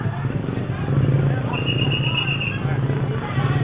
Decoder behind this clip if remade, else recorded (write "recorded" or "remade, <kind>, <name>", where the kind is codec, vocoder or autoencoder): recorded